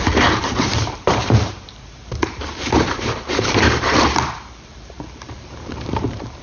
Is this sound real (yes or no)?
no